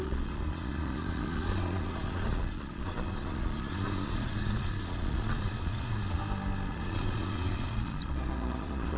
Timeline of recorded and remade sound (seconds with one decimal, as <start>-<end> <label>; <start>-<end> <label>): 0.0-6.2 remade; 6.2-6.7 recorded; 6.7-9.0 remade